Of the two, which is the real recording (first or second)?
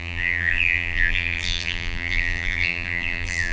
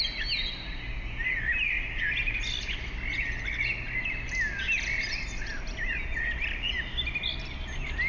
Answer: second